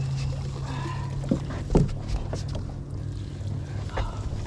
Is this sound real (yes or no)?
yes